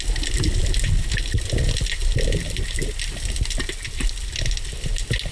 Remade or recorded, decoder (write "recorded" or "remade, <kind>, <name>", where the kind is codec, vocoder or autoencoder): recorded